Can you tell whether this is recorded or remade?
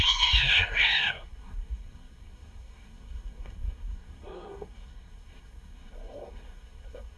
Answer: remade